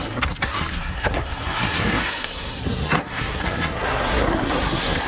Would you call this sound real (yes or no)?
no